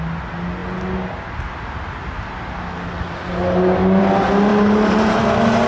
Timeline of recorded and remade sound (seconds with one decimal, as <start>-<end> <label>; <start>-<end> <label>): 0.0-5.7 recorded